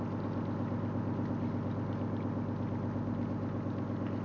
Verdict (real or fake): real